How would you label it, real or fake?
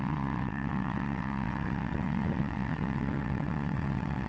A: fake